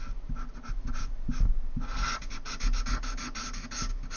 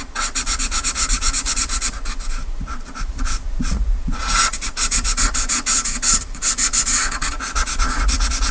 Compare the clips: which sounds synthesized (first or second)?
second